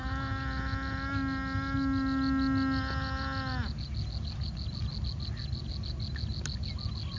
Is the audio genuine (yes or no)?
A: yes